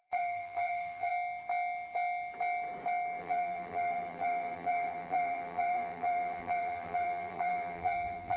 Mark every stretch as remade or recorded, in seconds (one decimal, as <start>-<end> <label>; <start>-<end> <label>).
0.0-1.1 remade; 1.1-3.2 recorded; 3.2-8.4 remade